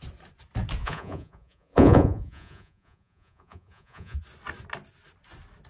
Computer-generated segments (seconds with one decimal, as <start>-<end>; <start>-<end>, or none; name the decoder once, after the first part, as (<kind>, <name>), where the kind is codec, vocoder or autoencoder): 0.8-4.2 (vocoder, Vocos)